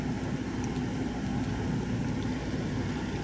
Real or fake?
real